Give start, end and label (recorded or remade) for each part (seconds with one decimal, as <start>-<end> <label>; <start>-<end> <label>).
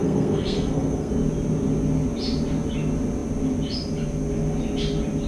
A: 0.0-1.1 remade; 1.1-5.3 recorded